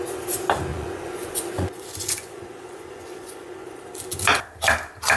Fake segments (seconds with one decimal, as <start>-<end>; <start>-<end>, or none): 0.7-3.8